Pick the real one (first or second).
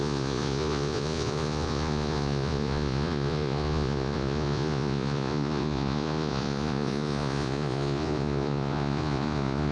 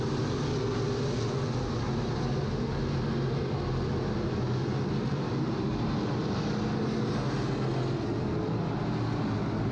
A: second